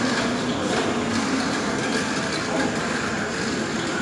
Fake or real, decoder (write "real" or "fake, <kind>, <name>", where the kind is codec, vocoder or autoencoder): real